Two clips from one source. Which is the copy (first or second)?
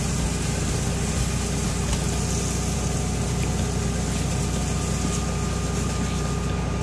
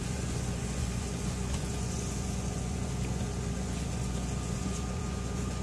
second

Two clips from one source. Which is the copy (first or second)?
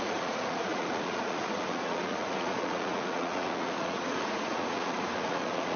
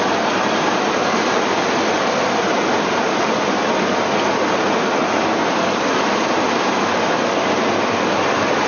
first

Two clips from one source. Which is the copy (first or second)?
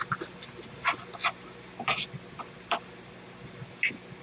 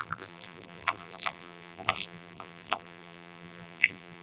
second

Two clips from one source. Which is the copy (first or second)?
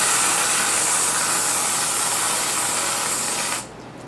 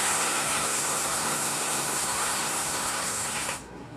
second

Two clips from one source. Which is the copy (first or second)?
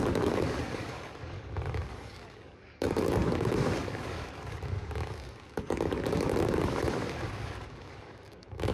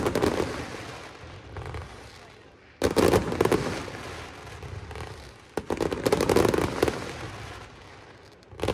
first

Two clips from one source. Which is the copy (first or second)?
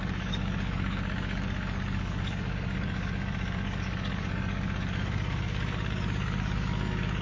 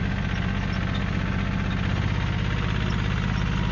first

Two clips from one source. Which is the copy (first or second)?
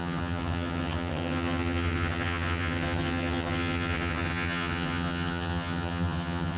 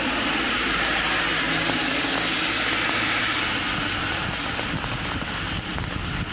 first